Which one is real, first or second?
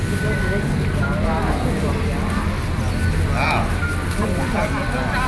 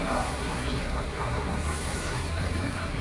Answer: first